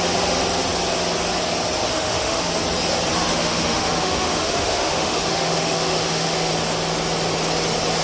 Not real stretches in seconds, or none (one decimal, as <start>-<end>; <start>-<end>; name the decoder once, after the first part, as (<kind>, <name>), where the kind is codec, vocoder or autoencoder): 1.9-2.5 (autoencoder, DAC-VAE); 3.3-6.5